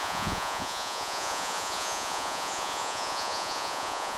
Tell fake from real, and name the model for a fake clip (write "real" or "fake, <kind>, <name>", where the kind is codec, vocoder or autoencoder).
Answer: fake, vocoder, Vocos